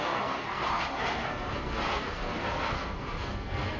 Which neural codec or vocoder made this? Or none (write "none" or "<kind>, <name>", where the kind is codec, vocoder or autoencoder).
codec, SNAC